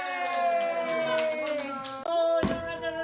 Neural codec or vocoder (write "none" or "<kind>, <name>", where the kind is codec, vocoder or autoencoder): none